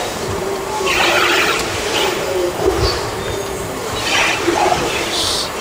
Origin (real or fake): fake